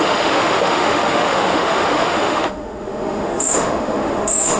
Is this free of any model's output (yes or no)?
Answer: no